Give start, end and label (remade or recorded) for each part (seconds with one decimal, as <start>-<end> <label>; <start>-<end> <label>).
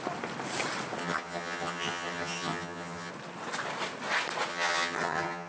0.0-1.0 recorded; 1.0-3.1 remade; 3.1-4.5 recorded; 4.5-5.5 remade